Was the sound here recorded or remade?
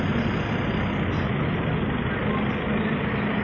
recorded